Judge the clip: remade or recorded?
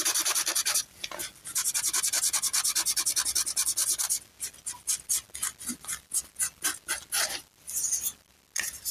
recorded